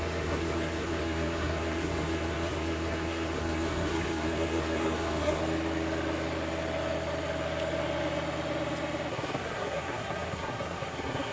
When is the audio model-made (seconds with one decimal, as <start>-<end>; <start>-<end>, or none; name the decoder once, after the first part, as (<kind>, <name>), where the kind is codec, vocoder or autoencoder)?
0.0-5.4 (codec, SNAC); 9.1-11.3